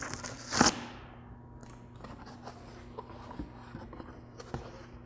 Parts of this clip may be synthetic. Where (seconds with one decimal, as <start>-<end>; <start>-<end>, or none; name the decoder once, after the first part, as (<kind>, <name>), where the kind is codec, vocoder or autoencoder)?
none